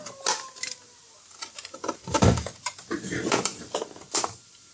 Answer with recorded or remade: remade